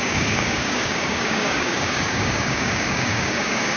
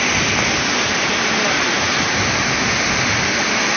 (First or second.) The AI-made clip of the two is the first